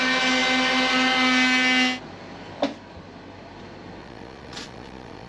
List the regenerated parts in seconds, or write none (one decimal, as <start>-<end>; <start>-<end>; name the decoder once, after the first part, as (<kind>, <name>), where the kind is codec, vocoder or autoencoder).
4.0-5.3 (vocoder, Vocos)